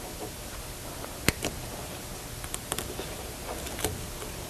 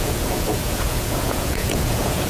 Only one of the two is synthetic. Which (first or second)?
second